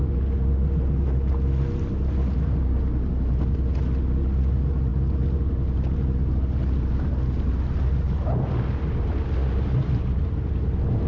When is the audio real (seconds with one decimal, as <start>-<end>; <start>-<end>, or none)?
0.0-11.1